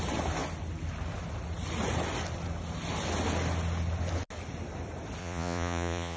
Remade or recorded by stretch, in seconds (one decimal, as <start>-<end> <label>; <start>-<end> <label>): 0.0-5.2 recorded; 5.2-6.2 remade